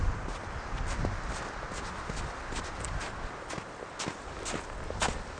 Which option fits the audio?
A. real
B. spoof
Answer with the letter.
A